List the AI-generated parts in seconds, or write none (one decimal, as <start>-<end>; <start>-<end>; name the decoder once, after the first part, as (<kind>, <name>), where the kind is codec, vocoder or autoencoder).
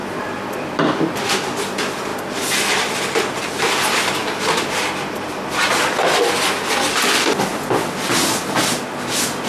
0.0-1.3 (vocoder, BigVGAN v2); 4.2-5.8